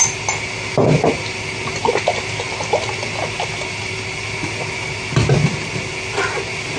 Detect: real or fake real